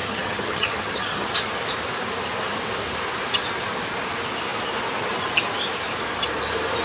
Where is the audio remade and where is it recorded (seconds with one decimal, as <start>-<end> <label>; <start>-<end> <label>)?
0.0-1.3 remade; 1.3-6.8 recorded